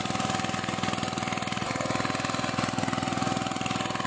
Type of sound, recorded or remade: recorded